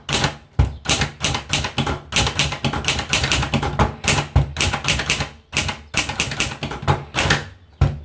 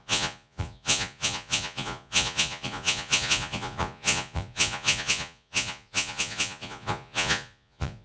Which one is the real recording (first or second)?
first